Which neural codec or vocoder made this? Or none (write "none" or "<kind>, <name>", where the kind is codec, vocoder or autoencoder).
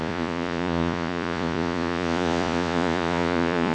vocoder, Vocos